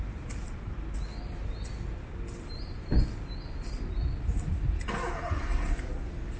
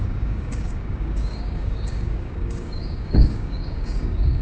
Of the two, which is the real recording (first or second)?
first